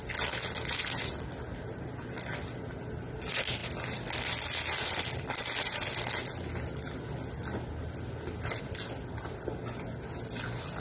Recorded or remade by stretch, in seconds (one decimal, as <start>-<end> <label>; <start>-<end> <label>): 0.0-10.8 recorded